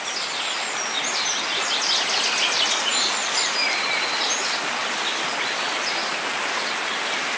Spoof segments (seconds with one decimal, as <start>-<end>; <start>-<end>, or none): 2.9-3.8; 4.8-5.3

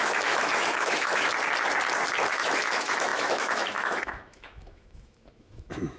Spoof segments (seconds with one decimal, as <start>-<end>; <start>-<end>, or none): 0.0-1.3; 2.3-6.0

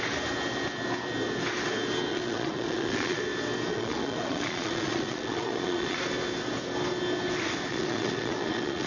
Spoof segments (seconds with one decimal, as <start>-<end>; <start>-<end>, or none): 2.1-3.2; 3.7-6.0; 7.7-8.9

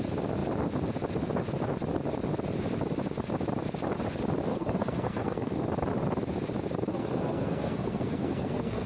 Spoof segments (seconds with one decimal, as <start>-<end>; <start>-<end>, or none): 4.5-5.6; 6.9-8.9

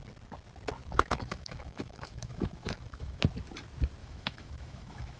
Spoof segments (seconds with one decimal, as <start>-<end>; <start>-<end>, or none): 0.8-3.2; 4.0-5.2